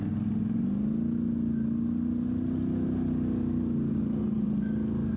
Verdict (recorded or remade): recorded